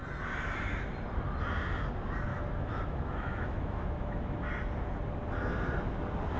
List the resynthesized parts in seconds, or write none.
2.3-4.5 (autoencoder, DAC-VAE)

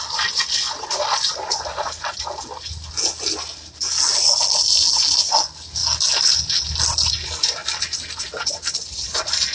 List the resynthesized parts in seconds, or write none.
none

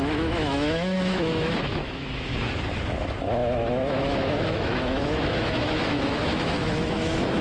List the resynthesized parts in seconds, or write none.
0.0-2.3 (autoencoder, DAC-VAE); 2.9-7.4

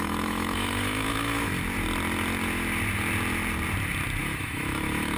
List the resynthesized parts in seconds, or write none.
0.0-1.5 (autoencoder, DAC-VAE); 4.2-5.2

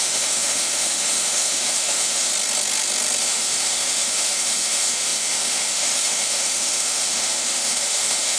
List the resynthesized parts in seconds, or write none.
0.0-2.3 (autoencoder, DAC-VAE); 3.2-8.4

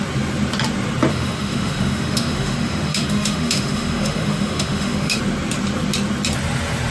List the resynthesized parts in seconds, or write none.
1.1-5.2 (autoencoder, DAC-VAE)

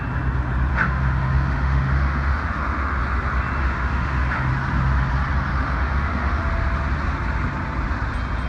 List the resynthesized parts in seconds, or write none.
0.7-3.0 (autoencoder, DAC-VAE); 3.6-4.5; 5.5-6.4

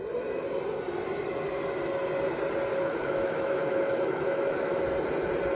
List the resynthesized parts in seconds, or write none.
2.7-4.8 (autoencoder, DAC-VAE)